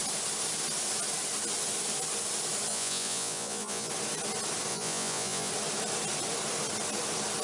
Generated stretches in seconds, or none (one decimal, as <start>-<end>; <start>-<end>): 2.7-3.9; 4.7-5.5